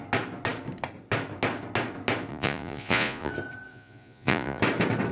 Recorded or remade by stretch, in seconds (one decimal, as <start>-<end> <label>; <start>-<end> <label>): 0.0-2.3 recorded; 2.3-3.3 remade; 3.3-3.7 recorded; 3.7-4.6 remade; 4.6-5.1 recorded